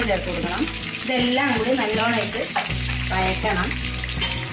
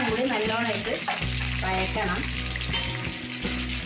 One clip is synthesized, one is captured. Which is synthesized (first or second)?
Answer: first